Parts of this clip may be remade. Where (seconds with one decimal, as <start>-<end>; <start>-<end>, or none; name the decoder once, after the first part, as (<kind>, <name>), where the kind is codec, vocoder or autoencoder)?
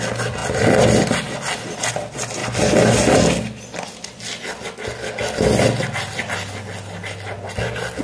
none